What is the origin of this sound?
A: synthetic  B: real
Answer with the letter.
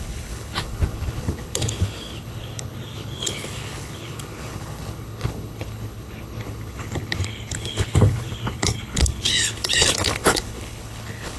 A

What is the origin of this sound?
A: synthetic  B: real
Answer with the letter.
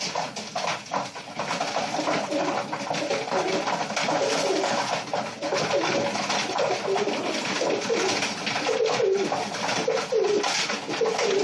B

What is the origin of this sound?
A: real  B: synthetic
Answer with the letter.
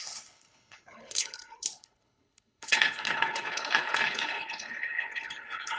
B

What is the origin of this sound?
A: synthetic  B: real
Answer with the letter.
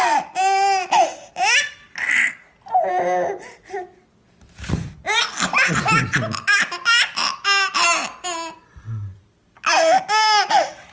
B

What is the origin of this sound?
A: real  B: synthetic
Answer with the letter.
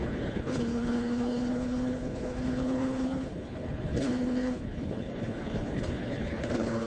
B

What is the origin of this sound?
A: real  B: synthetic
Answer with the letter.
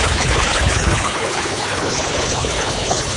B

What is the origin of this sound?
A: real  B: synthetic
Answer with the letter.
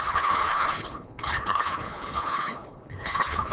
B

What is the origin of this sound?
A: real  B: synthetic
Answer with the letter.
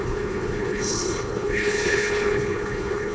B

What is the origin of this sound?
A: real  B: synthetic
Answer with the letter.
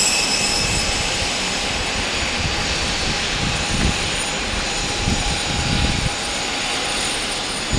A